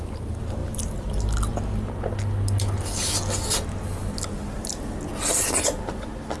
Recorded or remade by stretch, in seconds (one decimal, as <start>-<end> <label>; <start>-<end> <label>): 0.0-6.4 recorded